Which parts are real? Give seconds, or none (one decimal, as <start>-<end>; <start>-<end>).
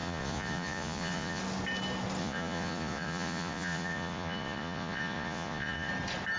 1.4-2.2; 5.9-6.4